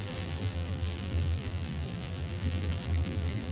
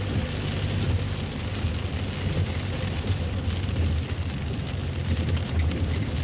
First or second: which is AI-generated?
first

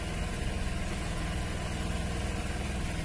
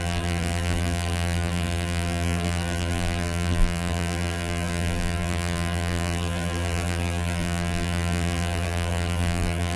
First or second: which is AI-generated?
second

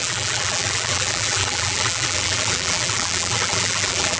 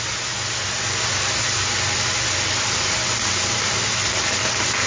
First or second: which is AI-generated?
first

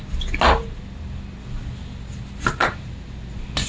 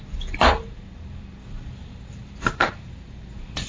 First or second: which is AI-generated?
second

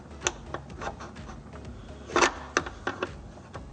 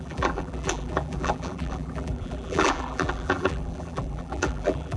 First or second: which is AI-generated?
second